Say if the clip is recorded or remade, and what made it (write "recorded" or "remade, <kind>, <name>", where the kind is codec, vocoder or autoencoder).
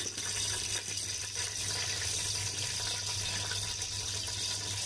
recorded